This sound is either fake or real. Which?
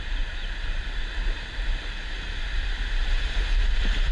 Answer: fake